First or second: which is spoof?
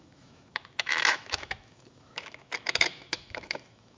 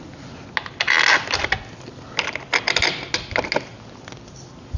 first